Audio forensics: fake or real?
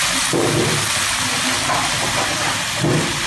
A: real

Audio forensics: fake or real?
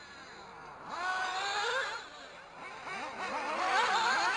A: real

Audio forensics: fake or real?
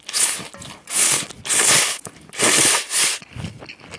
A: real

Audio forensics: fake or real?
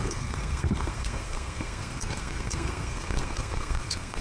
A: fake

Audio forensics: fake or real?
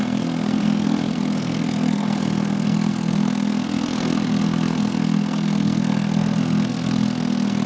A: fake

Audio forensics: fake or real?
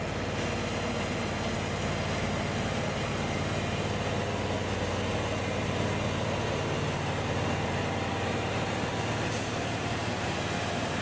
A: real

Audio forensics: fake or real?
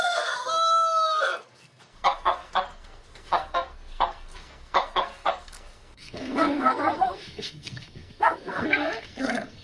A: fake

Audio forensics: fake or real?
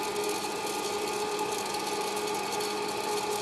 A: real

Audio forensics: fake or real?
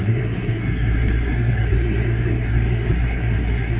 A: fake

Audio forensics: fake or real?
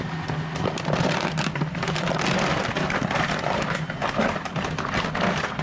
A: real